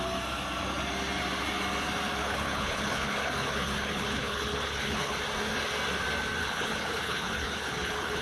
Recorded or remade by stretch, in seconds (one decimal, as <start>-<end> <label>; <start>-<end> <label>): 0.0-2.2 recorded; 2.2-5.2 remade; 5.2-6.4 recorded; 6.4-8.2 remade